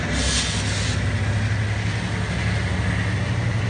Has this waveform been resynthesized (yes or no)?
no